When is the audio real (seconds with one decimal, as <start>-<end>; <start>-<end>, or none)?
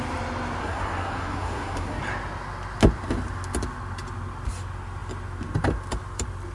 0.0-0.6; 2.0-6.5